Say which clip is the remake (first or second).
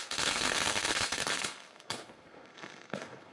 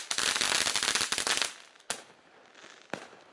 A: first